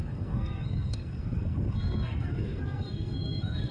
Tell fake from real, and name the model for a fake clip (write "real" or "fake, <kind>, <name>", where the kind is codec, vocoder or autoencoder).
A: fake, codec, SNAC